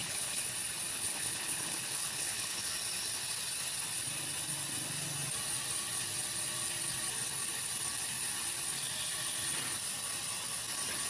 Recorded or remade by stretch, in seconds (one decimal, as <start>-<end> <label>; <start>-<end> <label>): 0.0-0.5 remade; 0.5-0.9 recorded; 0.9-2.7 remade; 2.7-11.1 recorded